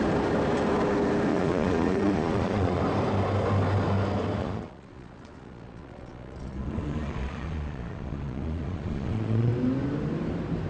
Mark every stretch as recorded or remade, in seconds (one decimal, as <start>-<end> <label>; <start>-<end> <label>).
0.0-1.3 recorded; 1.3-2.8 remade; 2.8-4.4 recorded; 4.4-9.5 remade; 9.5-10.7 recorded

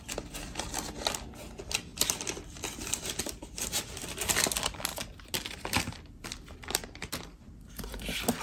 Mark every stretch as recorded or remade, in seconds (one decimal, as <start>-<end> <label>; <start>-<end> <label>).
0.0-8.4 recorded

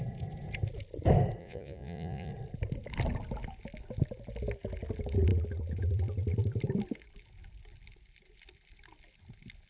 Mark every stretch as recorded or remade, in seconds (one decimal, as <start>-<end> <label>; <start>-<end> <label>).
0.0-1.4 recorded; 1.4-2.3 remade; 2.3-9.7 recorded

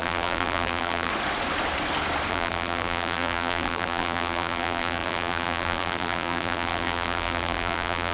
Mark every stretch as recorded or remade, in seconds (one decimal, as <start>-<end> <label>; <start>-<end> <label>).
0.0-1.1 remade; 1.1-2.3 recorded; 2.3-8.1 remade

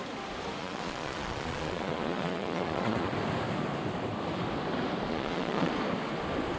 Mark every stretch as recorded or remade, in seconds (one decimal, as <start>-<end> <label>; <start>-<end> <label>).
0.0-0.6 recorded; 0.6-3.1 remade; 3.1-5.1 recorded; 5.1-5.7 remade; 5.7-6.6 recorded

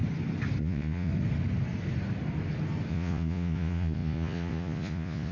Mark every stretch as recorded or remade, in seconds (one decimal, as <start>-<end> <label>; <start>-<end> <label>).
0.0-0.6 recorded; 0.6-1.1 remade; 1.1-2.9 recorded; 2.9-5.3 remade